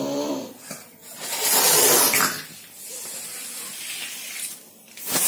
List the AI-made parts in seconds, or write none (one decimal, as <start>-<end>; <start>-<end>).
0.0-1.0; 2.8-5.3